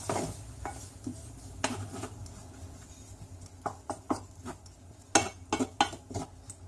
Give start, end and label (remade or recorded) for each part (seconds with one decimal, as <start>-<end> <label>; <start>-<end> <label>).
0.0-6.7 recorded